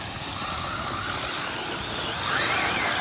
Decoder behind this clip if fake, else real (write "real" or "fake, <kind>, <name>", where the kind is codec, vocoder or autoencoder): fake, vocoder, BigVGAN v2